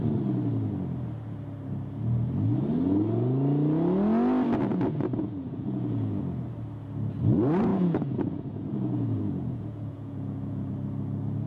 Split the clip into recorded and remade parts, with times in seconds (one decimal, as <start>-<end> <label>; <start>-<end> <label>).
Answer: 0.0-4.7 recorded; 4.7-6.2 remade; 6.2-7.7 recorded; 7.7-10.7 remade; 10.7-11.5 recorded